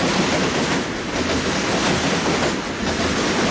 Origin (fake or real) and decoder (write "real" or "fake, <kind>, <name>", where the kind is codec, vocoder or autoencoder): real